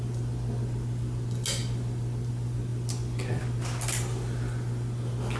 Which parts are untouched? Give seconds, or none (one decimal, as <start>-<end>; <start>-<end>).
0.0-5.4

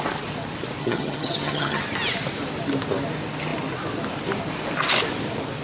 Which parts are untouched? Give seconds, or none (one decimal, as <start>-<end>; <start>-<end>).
0.0-0.8; 1.8-5.6

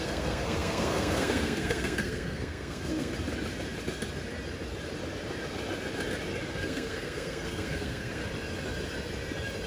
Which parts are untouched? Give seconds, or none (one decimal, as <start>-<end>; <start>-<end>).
3.1-6.5; 8.2-9.7

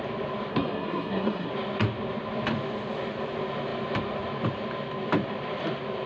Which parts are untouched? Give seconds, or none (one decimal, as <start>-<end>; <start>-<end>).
0.0-0.5; 1.5-6.1

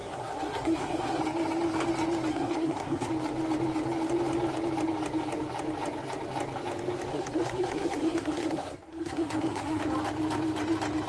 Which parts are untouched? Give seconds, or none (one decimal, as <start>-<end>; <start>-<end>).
1.2-2.3; 3.1-7.1; 9.8-11.1

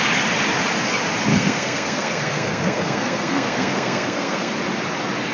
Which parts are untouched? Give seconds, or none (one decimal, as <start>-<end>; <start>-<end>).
0.0-1.3; 4.5-5.3

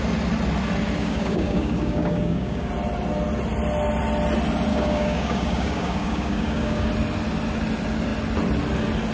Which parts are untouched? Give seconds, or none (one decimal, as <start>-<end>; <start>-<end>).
0.0-1.0; 2.7-4.7; 6.9-9.1

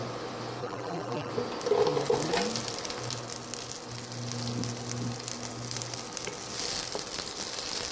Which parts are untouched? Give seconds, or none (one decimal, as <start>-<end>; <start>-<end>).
0.0-0.6; 1.3-7.9